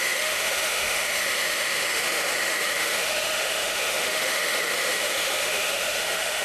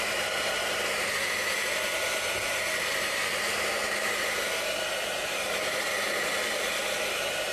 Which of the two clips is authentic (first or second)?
second